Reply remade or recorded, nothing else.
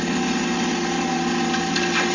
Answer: recorded